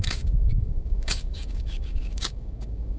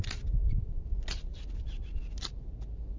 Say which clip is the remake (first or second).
first